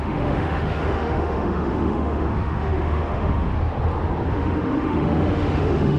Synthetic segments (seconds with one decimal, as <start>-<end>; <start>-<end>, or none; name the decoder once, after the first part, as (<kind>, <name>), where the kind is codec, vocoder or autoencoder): 0.0-3.5 (autoencoder, DAC-VAE); 4.3-6.0